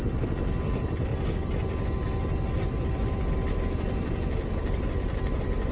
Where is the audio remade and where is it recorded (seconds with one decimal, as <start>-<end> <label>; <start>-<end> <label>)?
0.0-1.1 remade; 1.1-2.6 recorded; 2.6-5.7 remade